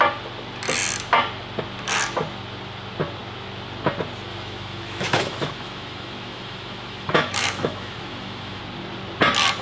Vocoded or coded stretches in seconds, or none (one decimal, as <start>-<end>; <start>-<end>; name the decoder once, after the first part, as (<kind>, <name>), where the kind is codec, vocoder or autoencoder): 4.3-8.6 (autoencoder, DAC-VAE)